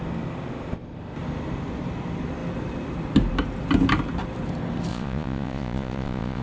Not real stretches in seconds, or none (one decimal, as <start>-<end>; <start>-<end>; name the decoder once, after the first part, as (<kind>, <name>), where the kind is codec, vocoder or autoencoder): 4.9-6.4 (vocoder, Vocos)